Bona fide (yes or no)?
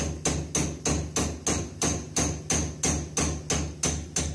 yes